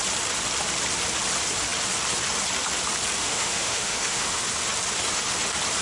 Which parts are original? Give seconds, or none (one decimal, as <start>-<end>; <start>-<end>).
0.0-3.2; 4.4-5.8

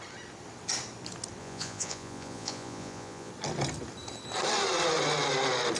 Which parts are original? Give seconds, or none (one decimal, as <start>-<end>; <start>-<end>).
0.0-1.4; 3.3-5.8